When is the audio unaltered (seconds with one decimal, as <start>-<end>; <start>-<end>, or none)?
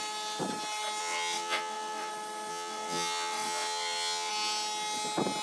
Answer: 0.0-1.0; 2.1-2.5; 4.3-5.4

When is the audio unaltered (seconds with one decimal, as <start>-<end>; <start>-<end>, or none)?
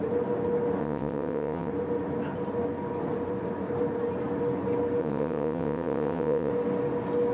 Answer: 0.0-0.8; 1.7-5.0; 6.5-7.3